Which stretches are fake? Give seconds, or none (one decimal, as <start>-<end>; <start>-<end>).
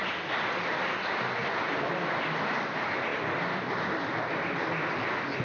0.0-0.7; 1.4-2.4; 3.1-3.7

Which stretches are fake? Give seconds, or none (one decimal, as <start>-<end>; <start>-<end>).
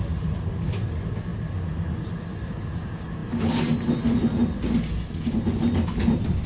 none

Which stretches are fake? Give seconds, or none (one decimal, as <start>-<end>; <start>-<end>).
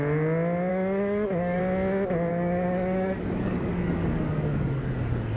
0.7-1.6; 2.3-5.4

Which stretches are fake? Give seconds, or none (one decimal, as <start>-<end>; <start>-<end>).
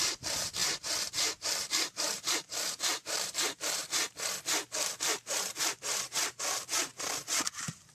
0.0-3.8; 5.0-6.9; 7.5-7.9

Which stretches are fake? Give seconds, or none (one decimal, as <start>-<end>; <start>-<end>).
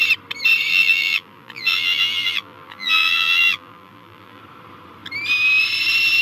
0.7-4.4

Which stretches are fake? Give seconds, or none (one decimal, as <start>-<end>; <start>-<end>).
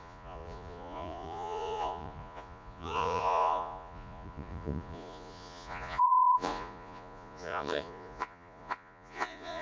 0.0-9.6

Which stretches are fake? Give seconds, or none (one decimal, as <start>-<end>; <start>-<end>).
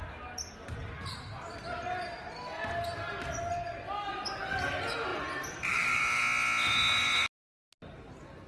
5.1-6.2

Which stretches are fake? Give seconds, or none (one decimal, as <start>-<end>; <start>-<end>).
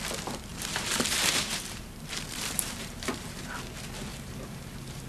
0.5-3.5; 4.1-5.1